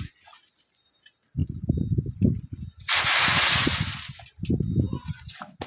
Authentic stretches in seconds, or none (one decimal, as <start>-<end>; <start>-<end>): 0.0-5.7